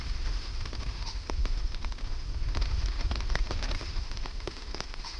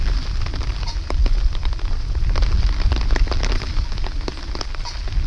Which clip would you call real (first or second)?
second